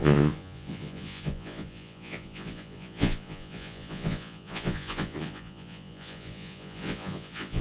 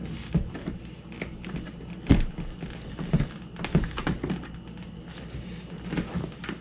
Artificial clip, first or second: first